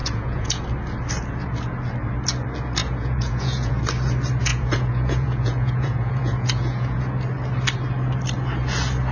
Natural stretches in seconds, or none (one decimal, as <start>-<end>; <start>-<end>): 0.6-2.8; 3.8-4.5; 7.0-9.1